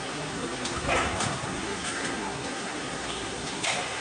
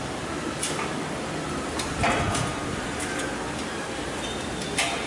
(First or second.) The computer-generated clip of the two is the first